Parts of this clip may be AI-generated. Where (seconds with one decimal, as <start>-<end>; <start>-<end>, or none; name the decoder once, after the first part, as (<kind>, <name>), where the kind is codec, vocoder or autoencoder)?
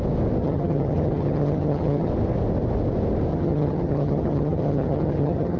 0.4-2.1 (vocoder, HiFi-GAN); 3.3-5.6